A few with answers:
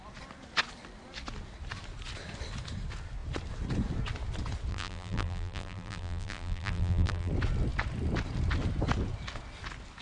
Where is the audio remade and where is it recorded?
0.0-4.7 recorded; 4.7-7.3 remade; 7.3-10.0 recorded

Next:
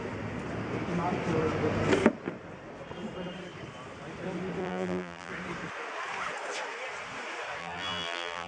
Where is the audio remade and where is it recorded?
0.0-4.6 recorded; 4.6-5.3 remade; 5.3-7.6 recorded; 7.6-8.5 remade

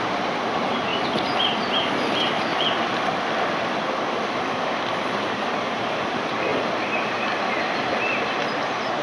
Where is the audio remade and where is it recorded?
0.0-0.9 remade; 0.9-1.7 recorded; 1.7-2.5 remade; 2.5-4.9 recorded; 4.9-6.5 remade; 6.5-8.6 recorded; 8.6-9.0 remade

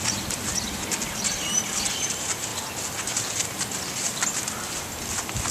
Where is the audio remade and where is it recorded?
0.0-0.5 remade; 0.5-1.9 recorded; 1.9-2.5 remade; 2.5-5.1 recorded; 5.1-5.5 remade